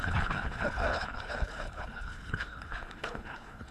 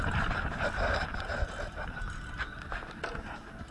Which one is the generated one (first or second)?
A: first